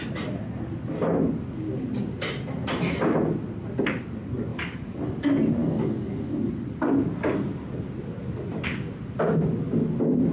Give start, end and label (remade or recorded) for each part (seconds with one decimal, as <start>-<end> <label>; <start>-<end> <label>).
0.0-4.5 recorded; 4.5-5.0 remade; 5.0-5.6 recorded; 5.6-6.5 remade; 6.5-10.3 recorded